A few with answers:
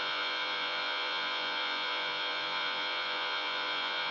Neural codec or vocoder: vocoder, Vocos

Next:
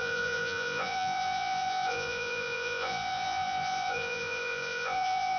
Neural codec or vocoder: vocoder, Vocos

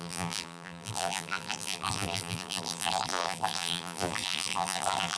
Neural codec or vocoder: vocoder, BigVGAN v2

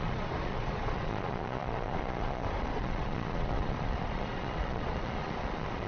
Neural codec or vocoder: vocoder, Vocos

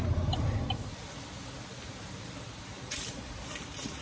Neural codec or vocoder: none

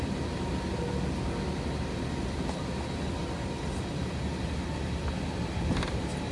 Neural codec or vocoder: none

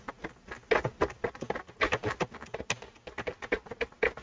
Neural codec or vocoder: none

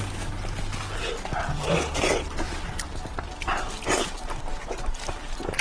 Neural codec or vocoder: none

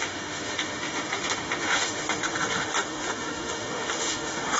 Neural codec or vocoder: autoencoder, DAC-VAE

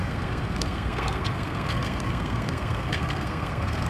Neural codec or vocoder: codec, SNAC